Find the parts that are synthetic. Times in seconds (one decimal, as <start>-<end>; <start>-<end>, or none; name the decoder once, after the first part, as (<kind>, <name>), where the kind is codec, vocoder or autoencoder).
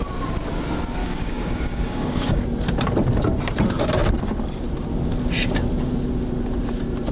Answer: 1.0-2.4 (codec, DAC)